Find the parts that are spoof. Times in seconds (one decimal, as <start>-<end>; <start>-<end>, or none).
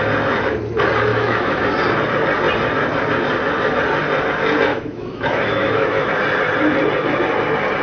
1.1-1.6; 4.7-6.1